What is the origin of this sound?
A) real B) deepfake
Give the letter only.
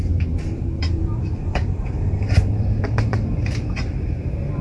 B